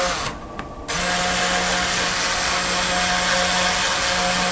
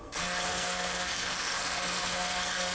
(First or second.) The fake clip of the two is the second